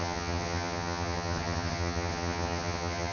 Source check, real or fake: fake